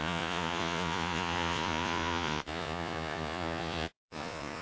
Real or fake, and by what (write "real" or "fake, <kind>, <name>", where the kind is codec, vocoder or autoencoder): fake, vocoder, Vocos